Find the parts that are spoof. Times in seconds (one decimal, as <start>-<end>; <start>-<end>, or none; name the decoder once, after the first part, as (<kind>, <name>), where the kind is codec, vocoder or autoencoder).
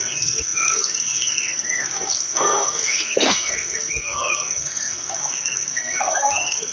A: 0.0-6.7 (codec, SNAC)